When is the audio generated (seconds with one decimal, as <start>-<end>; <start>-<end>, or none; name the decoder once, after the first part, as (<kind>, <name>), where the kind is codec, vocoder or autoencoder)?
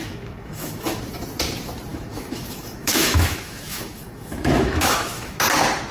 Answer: 0.0-1.0 (autoencoder, DAC-VAE); 1.9-5.4